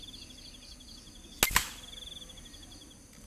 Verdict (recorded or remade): recorded